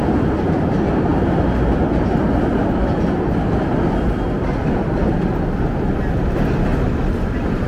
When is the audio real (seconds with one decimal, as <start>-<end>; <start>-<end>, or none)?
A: 0.0-7.7